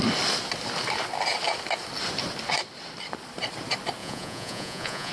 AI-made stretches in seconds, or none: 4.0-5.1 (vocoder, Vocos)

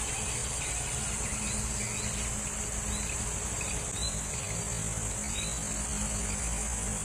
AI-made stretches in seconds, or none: none